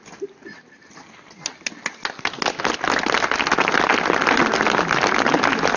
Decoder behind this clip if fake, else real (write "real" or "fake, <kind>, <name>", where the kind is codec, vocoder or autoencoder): real